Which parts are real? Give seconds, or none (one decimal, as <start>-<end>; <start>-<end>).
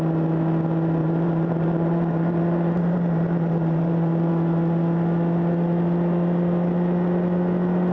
0.0-1.0; 4.3-7.9